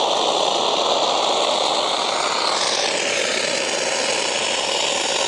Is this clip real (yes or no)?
yes